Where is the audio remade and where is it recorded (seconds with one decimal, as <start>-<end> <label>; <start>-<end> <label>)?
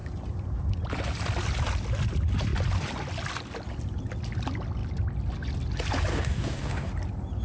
0.0-6.1 recorded; 6.1-6.9 remade; 6.9-7.4 recorded